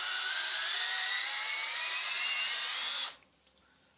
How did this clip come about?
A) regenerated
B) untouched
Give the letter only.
B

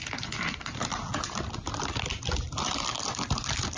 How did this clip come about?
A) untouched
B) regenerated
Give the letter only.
A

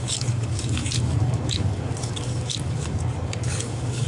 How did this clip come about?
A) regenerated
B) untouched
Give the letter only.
A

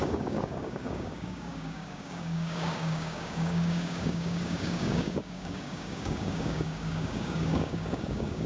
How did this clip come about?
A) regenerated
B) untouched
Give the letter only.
A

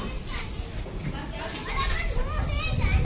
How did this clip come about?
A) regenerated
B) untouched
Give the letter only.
B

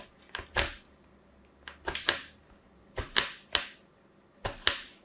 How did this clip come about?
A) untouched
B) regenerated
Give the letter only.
A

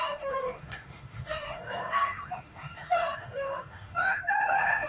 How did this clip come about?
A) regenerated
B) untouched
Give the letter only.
A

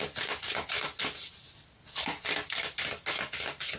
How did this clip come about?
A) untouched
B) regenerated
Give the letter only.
A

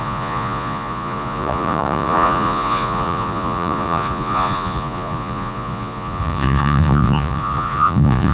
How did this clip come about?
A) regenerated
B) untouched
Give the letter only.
A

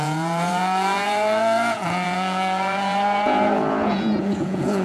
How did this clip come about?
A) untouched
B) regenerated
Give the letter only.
B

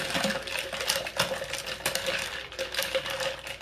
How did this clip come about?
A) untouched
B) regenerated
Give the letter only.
A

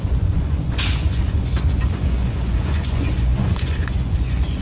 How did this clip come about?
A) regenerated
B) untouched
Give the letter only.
A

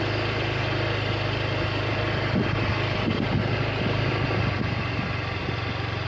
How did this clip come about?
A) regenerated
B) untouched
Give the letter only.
B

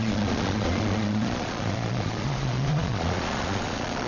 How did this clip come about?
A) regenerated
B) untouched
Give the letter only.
A